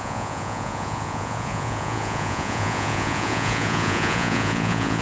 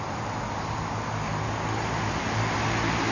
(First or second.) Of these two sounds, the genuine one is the second